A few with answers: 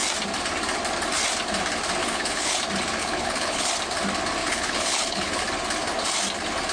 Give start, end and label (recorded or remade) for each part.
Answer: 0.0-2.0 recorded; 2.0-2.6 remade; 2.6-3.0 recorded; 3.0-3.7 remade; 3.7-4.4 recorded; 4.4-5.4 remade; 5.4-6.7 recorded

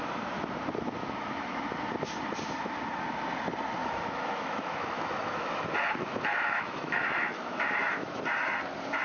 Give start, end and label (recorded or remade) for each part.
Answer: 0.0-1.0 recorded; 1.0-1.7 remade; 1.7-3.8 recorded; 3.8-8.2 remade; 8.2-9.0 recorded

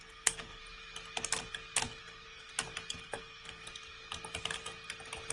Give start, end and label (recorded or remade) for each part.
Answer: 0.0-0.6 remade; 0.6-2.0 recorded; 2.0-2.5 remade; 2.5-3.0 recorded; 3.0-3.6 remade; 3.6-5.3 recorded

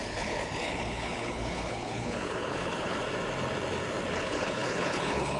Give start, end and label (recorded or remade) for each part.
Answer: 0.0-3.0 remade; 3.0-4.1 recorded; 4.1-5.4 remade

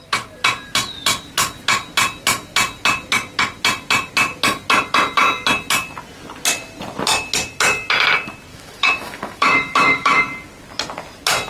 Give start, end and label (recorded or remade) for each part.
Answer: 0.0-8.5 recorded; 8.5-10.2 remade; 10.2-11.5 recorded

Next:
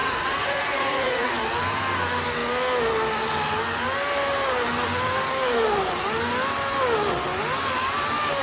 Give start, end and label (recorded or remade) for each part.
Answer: 0.0-1.3 remade; 1.3-8.4 recorded

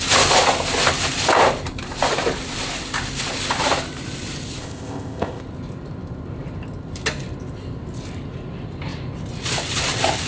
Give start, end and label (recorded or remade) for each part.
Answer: 0.0-4.6 recorded; 4.6-5.4 remade; 5.4-10.3 recorded